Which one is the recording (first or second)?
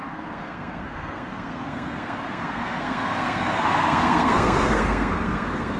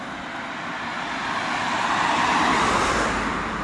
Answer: second